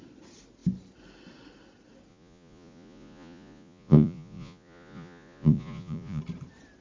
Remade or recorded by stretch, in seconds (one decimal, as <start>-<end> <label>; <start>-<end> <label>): 0.0-2.1 recorded; 2.1-6.2 remade; 6.2-6.8 recorded